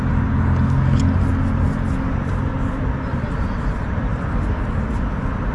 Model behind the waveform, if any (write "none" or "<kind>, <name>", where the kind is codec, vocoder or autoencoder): none